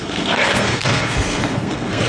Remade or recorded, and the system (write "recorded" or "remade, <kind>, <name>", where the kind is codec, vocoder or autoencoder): remade, codec, SNAC